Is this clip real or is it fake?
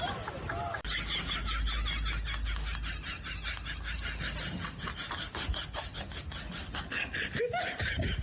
real